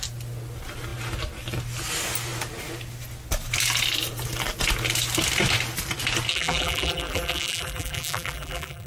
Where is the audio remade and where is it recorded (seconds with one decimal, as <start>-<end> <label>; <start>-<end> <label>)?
0.0-6.3 recorded; 6.3-8.9 remade